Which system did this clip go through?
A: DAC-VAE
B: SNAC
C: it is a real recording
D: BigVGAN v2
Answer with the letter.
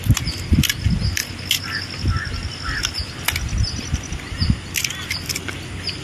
C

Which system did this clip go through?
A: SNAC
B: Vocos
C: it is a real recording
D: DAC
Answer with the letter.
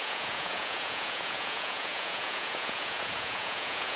B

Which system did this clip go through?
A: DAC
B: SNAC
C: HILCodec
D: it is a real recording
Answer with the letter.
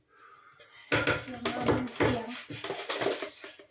D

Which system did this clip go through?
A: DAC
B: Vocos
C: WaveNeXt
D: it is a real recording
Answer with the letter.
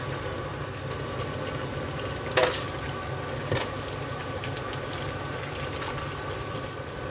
D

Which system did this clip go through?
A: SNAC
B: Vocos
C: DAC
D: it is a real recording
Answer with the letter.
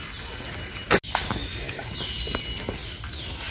D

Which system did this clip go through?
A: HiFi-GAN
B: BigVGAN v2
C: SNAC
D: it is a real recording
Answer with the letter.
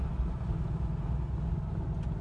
D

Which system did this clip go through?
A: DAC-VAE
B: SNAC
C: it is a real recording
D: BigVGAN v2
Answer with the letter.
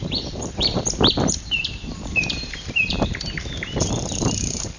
D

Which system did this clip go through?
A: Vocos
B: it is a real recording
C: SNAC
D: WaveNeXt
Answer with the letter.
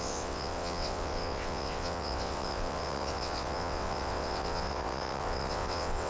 D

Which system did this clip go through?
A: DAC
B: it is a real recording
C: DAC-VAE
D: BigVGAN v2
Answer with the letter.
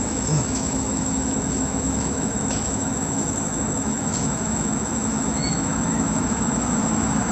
C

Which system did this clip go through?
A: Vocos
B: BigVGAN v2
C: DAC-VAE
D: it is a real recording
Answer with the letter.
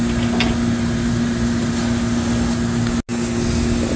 D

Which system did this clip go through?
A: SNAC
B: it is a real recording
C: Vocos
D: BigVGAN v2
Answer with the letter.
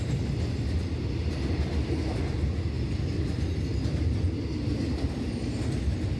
B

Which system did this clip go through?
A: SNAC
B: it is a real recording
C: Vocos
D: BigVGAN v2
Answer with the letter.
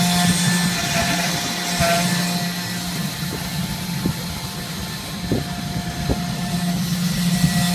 B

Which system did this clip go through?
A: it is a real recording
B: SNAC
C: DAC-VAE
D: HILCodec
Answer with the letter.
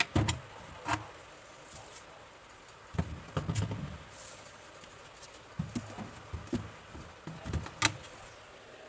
A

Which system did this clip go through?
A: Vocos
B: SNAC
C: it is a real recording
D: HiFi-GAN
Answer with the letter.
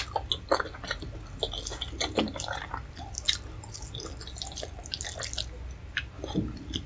C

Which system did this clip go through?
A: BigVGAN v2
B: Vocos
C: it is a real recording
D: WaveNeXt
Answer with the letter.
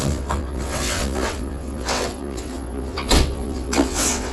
D